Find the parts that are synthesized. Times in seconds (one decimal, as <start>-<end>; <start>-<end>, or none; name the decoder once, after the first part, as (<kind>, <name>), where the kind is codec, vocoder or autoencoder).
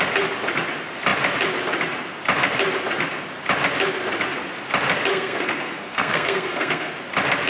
5.1-6.9 (codec, SNAC)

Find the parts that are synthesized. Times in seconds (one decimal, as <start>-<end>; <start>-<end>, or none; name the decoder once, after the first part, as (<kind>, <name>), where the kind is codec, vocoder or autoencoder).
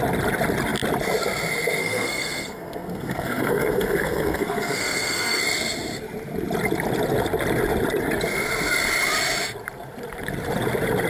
1.8-5.4 (codec, SNAC)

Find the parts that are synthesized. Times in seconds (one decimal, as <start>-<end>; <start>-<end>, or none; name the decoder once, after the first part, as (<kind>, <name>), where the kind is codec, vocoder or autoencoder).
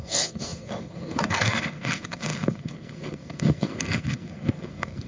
0.0-5.1 (codec, SNAC)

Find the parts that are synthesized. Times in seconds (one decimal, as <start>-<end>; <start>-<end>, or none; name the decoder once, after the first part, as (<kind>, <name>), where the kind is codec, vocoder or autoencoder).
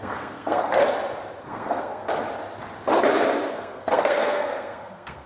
0.0-0.8 (codec, SNAC); 1.4-2.0; 3.5-5.3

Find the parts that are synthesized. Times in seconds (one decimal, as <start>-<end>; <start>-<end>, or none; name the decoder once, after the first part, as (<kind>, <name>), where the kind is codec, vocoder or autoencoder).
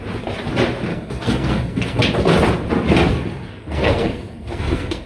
0.9-2.0 (codec, SNAC); 3.1-5.1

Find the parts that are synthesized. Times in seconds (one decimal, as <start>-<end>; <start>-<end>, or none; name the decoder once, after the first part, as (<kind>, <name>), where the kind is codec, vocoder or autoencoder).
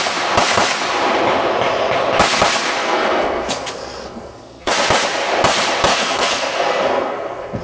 2.8-4.7 (codec, SNAC); 5.9-7.6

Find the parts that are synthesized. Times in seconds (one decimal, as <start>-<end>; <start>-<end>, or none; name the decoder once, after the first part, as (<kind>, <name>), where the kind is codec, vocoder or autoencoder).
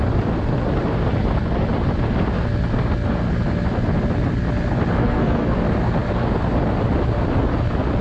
5.0-5.6 (codec, SNAC)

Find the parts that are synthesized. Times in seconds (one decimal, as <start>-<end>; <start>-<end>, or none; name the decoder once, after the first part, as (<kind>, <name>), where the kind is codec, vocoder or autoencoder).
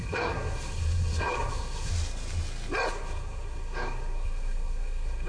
0.0-1.9 (codec, SNAC); 2.9-5.3